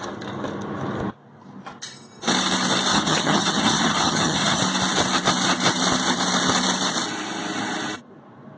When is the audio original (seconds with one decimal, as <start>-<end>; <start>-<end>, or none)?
0.0-2.9; 4.6-8.6